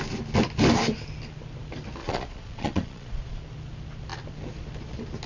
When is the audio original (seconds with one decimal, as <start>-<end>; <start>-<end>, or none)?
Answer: 0.0-2.0; 3.4-5.3